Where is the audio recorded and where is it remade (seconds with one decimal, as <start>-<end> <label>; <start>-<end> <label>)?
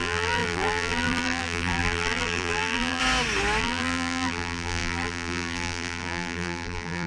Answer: 0.0-3.0 remade; 3.0-3.6 recorded; 3.6-7.1 remade